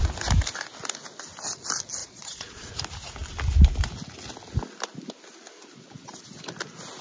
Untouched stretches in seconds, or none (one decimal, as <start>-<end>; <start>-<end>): 0.0-2.0; 2.7-7.0